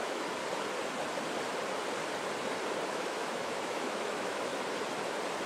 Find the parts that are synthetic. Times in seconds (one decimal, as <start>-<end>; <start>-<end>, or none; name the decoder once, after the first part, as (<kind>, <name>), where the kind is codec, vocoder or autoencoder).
0.0-0.4 (autoencoder, DAC-VAE); 2.9-4.5